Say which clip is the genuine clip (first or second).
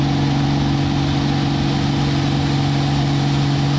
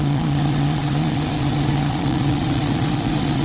first